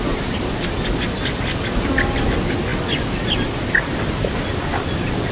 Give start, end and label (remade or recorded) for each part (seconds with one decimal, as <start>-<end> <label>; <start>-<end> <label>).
0.0-5.3 recorded